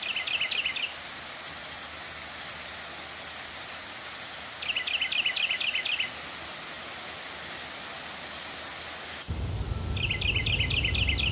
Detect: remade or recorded recorded